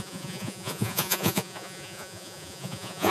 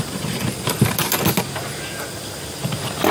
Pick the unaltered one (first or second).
second